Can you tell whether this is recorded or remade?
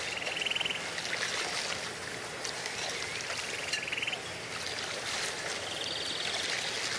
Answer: recorded